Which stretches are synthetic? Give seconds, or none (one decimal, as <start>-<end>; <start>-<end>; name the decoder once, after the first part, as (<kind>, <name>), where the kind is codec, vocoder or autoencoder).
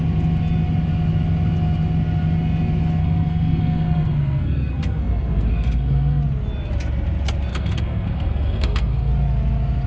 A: 3.0-6.2 (codec, SNAC); 7.5-9.1